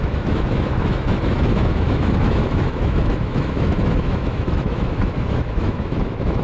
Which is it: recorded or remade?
remade